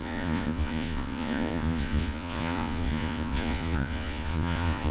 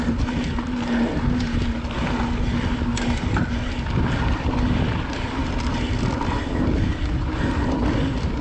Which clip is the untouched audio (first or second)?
second